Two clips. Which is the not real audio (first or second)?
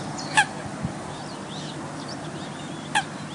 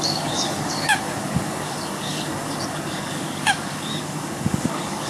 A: second